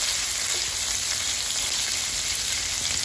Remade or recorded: recorded